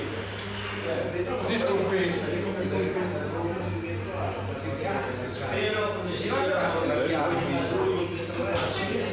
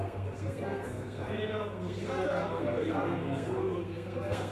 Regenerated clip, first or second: second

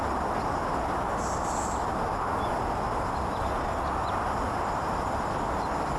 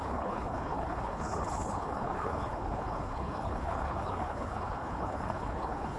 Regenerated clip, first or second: second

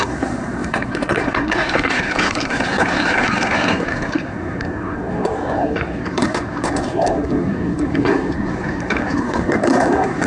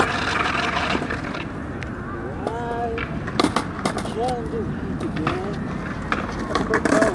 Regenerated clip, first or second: first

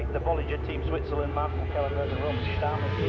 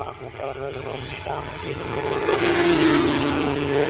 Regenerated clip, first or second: second